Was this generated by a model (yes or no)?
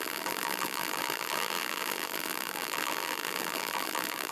yes